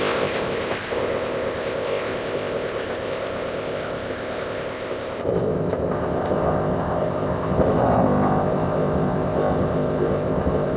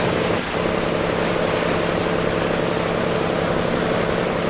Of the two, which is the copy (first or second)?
first